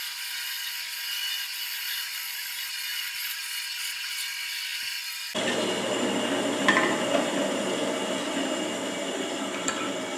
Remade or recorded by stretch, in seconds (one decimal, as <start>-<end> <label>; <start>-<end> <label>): 0.0-2.9 recorded; 2.9-3.4 remade; 3.4-10.2 recorded